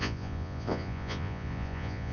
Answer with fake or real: fake